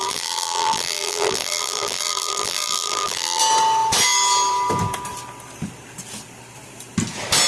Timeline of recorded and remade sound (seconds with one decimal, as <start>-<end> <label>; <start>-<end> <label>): 0.0-3.4 remade; 3.4-7.5 recorded